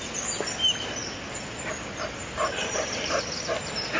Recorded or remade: recorded